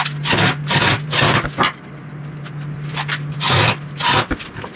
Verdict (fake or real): real